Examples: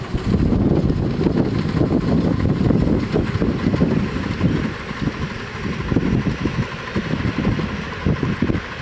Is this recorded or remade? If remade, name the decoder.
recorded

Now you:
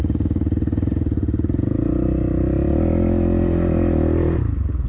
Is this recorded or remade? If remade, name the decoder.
recorded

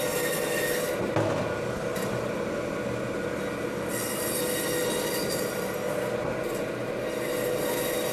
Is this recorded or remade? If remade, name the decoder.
recorded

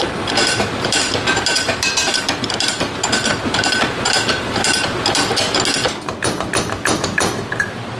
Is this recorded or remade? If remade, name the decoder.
recorded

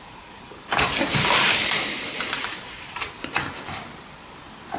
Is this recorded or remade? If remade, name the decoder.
remade, vocoder, BigVGAN v2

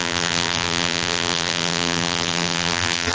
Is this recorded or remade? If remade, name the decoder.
remade, vocoder, BigVGAN v2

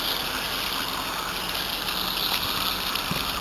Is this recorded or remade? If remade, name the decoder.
recorded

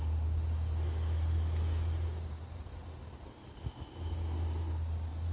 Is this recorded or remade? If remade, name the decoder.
recorded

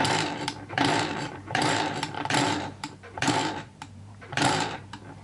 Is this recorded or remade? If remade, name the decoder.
remade, vocoder, BigVGAN v2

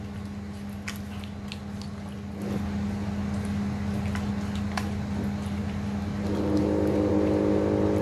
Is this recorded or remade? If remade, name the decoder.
recorded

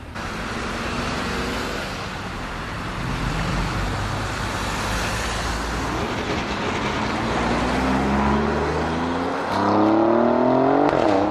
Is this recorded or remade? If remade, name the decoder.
recorded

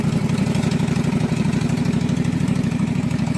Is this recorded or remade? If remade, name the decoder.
remade, vocoder, BigVGAN v2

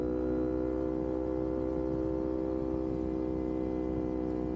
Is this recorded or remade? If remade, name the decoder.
recorded